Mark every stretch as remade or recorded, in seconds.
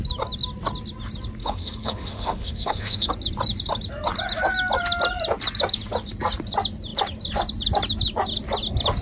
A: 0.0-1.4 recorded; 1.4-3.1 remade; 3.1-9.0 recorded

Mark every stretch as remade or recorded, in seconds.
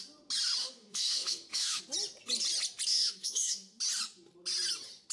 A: 0.0-0.6 recorded; 0.6-1.8 remade; 1.8-2.9 recorded; 2.9-3.8 remade; 3.8-5.1 recorded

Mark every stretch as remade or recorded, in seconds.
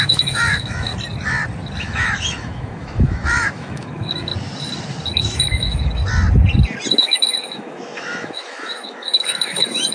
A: 0.0-0.9 remade; 0.9-1.8 recorded; 1.8-4.3 remade; 4.3-5.2 recorded; 5.2-6.0 remade; 6.0-6.9 recorded; 6.9-9.9 remade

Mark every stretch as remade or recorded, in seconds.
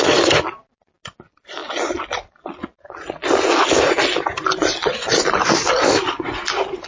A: 0.0-6.9 recorded